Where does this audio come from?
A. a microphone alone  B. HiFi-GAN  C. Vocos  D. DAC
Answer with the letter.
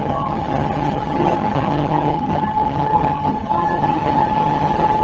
B